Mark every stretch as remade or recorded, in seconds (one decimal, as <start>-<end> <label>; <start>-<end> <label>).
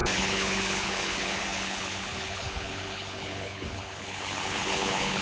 0.0-5.2 remade